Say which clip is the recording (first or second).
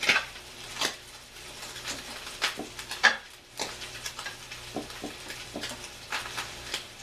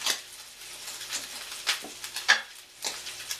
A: second